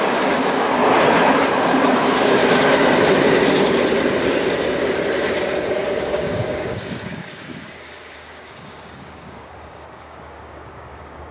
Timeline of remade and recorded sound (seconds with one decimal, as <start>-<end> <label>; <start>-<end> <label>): 0.0-0.8 remade; 0.8-1.7 recorded; 1.7-2.4 remade; 2.4-5.7 recorded; 5.7-11.3 remade